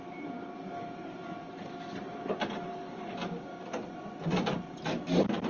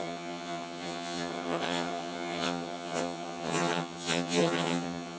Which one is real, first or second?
first